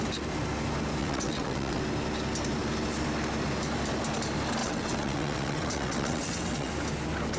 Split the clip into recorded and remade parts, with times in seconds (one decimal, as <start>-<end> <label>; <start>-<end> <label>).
0.0-1.0 recorded; 1.0-1.8 remade; 1.8-4.6 recorded; 4.6-6.7 remade; 6.7-7.4 recorded